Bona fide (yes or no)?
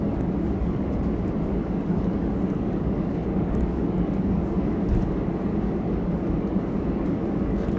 no